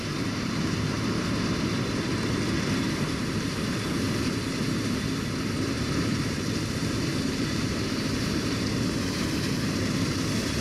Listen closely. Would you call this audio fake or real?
fake